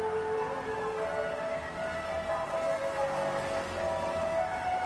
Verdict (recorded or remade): recorded